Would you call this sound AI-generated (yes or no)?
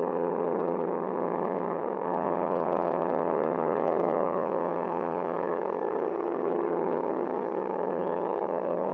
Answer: yes